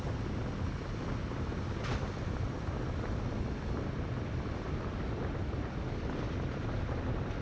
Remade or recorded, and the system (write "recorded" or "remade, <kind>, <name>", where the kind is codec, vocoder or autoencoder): recorded